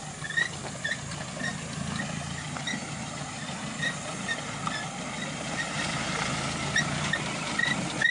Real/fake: real